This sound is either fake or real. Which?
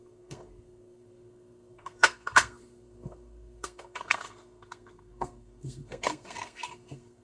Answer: fake